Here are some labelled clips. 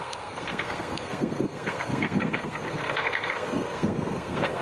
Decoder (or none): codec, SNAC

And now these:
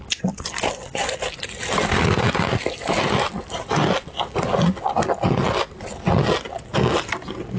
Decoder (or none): none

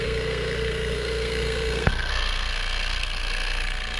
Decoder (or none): codec, SNAC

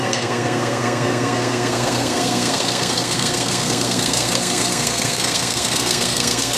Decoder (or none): codec, SNAC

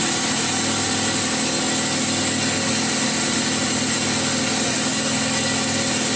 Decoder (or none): none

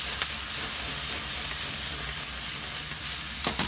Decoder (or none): none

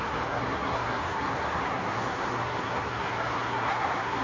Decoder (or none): codec, SNAC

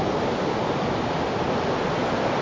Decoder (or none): none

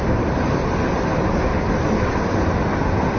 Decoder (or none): none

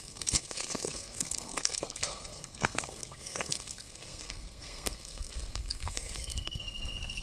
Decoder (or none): codec, SNAC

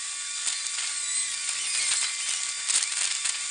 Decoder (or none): none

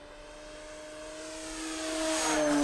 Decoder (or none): none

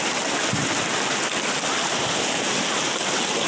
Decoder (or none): none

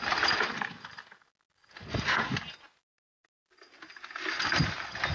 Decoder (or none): none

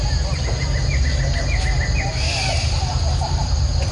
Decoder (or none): none